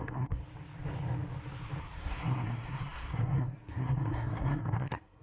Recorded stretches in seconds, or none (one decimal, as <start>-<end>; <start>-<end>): 0.4-1.8